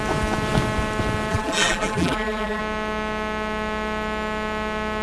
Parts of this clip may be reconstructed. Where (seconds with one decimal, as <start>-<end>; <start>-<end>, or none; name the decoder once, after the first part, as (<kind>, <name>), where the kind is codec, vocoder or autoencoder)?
1.3-2.6 (vocoder, BigVGAN v2)